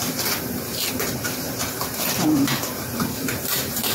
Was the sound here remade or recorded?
remade